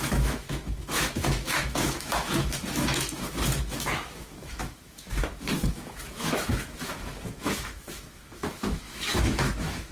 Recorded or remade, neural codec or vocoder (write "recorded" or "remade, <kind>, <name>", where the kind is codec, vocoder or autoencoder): remade, autoencoder, DAC-VAE